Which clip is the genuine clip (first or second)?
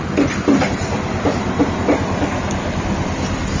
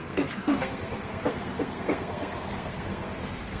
first